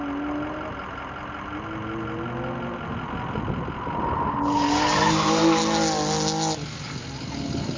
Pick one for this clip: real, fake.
real